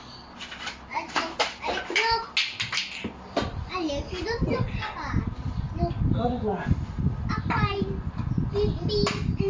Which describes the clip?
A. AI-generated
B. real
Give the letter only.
B